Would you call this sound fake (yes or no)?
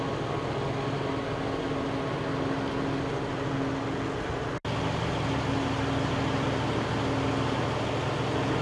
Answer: no